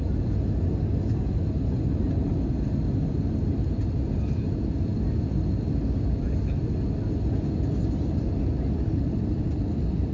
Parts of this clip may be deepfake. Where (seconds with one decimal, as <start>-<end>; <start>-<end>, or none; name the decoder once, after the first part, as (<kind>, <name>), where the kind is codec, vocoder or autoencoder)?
none